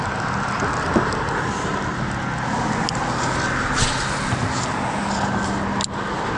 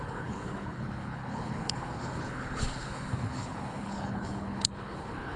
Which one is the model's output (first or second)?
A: second